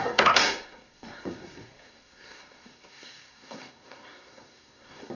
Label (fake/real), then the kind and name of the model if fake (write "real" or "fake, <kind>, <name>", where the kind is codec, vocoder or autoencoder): fake, codec, SNAC